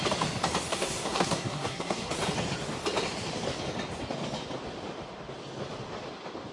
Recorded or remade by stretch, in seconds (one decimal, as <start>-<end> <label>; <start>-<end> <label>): 0.0-0.7 recorded; 0.7-2.1 remade; 2.1-6.5 recorded